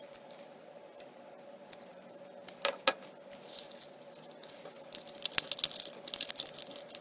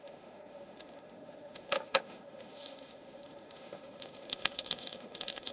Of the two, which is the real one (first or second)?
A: first